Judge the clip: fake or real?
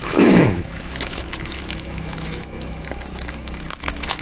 fake